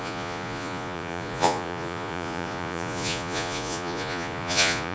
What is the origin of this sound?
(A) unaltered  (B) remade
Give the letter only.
B